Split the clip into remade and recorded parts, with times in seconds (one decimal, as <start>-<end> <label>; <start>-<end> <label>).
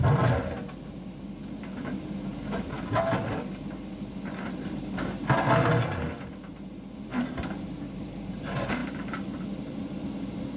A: 0.0-7.1 recorded; 7.1-8.3 remade; 8.3-10.6 recorded